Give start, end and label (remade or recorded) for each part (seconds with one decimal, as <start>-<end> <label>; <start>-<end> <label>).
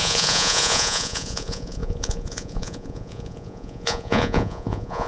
0.0-5.1 remade